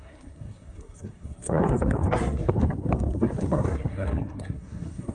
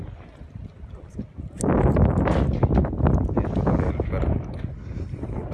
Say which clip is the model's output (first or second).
first